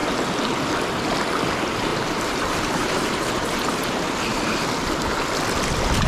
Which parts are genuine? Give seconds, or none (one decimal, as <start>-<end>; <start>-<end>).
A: 0.0-1.9; 3.3-6.1